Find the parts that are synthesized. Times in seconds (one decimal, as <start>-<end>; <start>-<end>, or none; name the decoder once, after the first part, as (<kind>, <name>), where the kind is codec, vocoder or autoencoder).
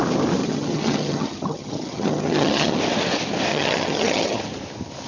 0.4-2.8 (vocoder, HiFi-GAN); 3.5-4.4